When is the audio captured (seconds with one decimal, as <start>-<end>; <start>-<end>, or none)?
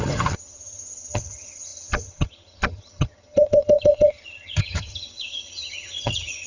none